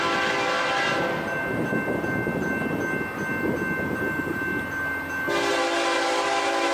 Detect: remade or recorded recorded